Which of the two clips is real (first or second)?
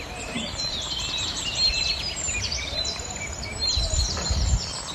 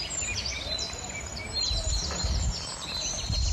second